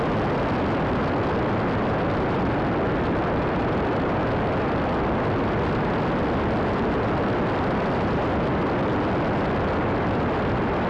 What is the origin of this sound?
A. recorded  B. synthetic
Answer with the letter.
A